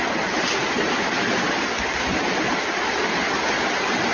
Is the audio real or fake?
real